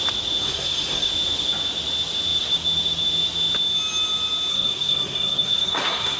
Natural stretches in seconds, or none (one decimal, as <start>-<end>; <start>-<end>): 0.0-0.4; 1.1-4.5